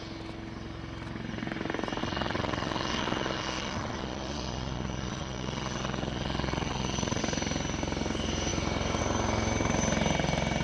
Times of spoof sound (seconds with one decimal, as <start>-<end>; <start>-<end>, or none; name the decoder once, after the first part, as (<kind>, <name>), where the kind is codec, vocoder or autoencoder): 2.0-7.2 (vocoder, Vocos)